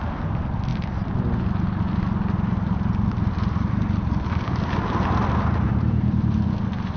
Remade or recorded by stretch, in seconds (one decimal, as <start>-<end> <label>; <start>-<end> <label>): 0.0-7.0 recorded